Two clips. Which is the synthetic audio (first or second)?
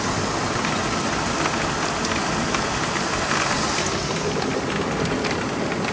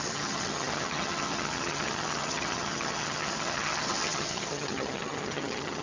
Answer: second